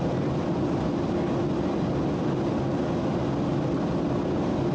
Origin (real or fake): real